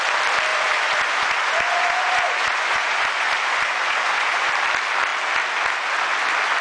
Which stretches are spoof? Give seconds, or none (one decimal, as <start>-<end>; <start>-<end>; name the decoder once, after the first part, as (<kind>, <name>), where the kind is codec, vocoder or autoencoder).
0.5-4.5 (vocoder, Vocos)